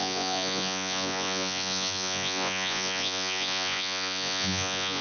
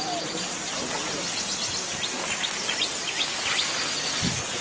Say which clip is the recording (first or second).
second